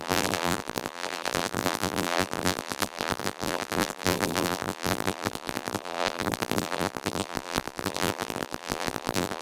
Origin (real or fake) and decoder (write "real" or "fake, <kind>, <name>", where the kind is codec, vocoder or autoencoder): fake, vocoder, BigVGAN v2